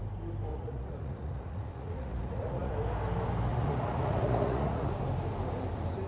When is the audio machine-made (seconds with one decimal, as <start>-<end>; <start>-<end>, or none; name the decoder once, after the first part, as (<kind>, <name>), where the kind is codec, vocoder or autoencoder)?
0.5-2.7 (vocoder, Vocos); 3.5-4.9